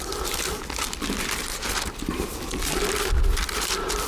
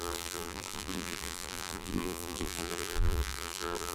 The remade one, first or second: second